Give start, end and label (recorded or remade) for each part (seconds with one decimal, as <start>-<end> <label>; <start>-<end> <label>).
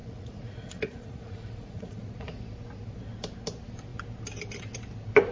0.0-2.4 remade; 2.4-5.3 recorded